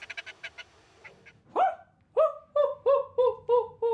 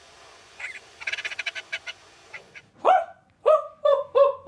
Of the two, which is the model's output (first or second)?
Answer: second